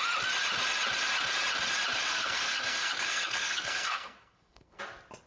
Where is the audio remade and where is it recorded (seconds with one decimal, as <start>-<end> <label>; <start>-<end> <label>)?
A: 0.0-2.1 recorded; 2.1-4.8 remade; 4.8-5.3 recorded